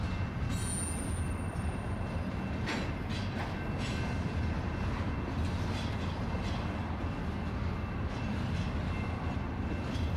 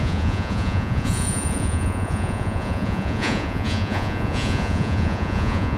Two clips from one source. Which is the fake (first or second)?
second